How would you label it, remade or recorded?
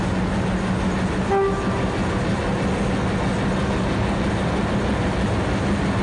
recorded